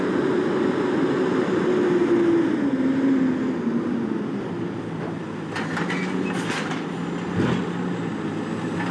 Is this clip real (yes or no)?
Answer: yes